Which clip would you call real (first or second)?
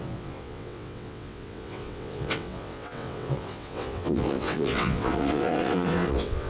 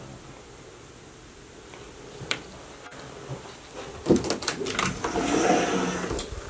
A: second